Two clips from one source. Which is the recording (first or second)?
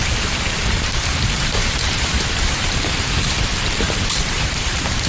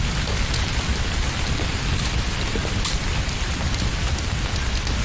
second